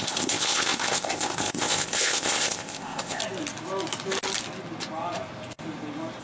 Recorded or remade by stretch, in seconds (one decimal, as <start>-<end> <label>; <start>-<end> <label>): 0.0-3.2 remade; 3.2-6.2 recorded